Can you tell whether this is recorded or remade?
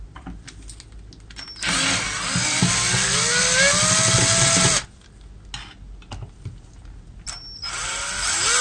recorded